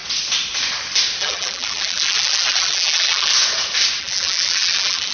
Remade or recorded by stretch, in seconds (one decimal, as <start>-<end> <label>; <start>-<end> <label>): 0.0-1.2 recorded; 1.2-3.3 remade; 3.3-4.0 recorded; 4.0-5.1 remade